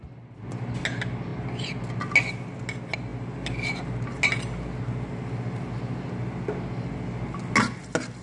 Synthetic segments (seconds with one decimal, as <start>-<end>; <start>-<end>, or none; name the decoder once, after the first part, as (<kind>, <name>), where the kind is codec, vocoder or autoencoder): none